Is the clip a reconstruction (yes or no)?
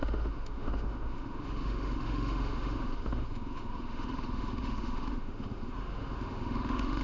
yes